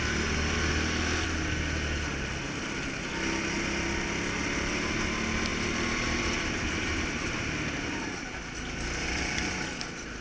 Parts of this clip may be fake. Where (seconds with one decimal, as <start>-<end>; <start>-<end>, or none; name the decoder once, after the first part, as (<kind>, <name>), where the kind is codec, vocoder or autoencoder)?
5.5-7.4 (vocoder, BigVGAN v2)